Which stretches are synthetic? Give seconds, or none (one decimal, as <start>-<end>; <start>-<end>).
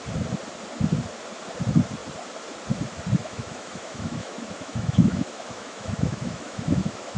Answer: 3.2-7.2